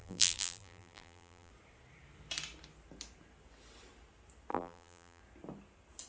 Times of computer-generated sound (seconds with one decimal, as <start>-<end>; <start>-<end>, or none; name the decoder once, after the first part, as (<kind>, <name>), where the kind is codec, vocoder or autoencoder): 0.0-1.5 (vocoder, BigVGAN v2); 4.5-5.2